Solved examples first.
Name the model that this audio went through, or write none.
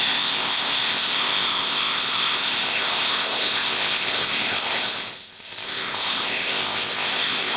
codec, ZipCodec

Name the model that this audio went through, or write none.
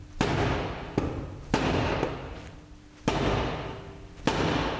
none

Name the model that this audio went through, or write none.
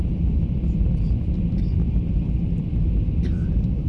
vocoder, BigVGAN v2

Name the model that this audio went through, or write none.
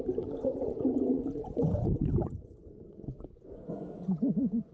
vocoder, Vocos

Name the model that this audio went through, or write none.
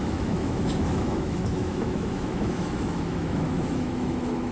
autoencoder, DAC-VAE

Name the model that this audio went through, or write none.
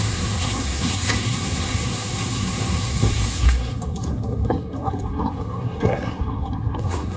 codec, SNAC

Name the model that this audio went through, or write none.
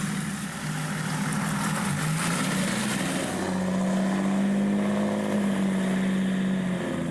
none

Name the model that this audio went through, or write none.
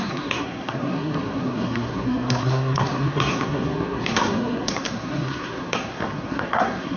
codec, SNAC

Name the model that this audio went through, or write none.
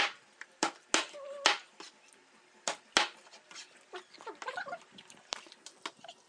none